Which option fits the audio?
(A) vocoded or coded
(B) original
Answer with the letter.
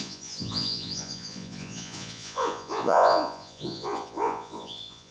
A